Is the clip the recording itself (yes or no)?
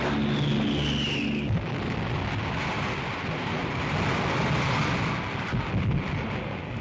yes